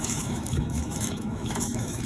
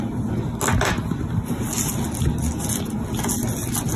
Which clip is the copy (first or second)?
first